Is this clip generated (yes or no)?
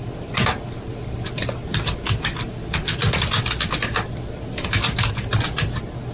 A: no